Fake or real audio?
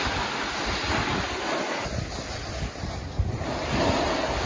real